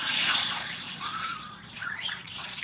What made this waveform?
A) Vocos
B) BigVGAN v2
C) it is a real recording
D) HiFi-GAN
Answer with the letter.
A